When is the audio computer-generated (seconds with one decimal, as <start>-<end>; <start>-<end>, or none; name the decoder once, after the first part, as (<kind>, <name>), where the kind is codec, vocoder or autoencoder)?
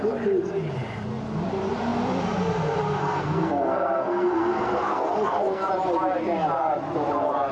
3.0-5.7 (codec, SNAC)